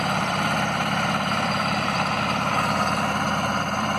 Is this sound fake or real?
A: fake